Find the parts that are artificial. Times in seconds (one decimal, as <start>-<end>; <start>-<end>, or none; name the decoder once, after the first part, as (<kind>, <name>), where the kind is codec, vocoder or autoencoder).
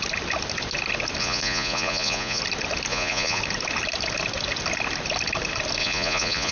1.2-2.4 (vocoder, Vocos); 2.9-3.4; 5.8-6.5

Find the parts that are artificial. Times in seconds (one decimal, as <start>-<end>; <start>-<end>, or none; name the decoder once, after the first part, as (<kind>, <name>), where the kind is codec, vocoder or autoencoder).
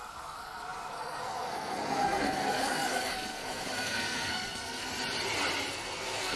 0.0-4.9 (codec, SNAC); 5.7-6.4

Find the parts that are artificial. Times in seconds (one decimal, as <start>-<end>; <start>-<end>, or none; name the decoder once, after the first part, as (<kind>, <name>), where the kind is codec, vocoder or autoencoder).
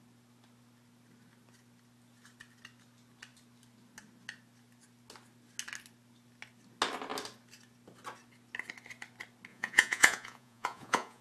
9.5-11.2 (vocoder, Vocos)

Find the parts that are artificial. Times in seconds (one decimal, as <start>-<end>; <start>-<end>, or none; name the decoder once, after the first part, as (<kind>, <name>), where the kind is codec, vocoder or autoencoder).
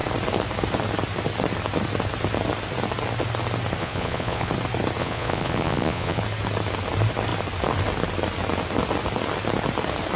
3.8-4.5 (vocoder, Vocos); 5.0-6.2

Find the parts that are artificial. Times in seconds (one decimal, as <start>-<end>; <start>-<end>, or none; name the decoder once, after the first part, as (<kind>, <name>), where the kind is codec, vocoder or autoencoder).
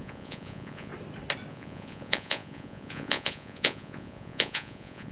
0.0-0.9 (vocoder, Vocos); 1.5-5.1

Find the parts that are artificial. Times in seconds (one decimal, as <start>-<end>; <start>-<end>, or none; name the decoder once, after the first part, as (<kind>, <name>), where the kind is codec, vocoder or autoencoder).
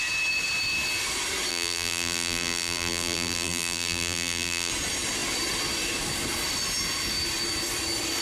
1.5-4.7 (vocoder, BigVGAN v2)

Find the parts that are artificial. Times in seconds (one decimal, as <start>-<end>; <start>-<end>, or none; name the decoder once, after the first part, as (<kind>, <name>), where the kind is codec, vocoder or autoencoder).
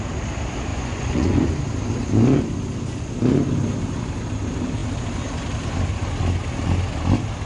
0.7-1.5 (vocoder, Vocos)